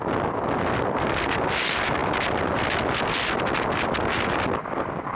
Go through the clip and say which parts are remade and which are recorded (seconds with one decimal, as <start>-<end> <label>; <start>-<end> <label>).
0.0-5.1 recorded